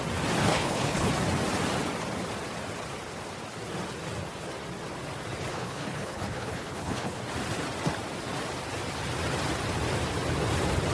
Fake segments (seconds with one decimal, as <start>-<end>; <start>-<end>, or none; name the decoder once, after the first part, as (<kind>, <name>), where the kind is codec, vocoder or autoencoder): 0.4-1.1 (codec, HILCodec); 5.5-7.2